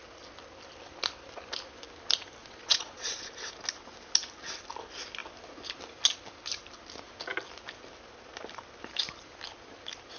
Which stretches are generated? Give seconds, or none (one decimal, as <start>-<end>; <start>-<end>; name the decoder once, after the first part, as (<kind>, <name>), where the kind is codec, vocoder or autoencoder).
2.4-3.3 (vocoder, Vocos)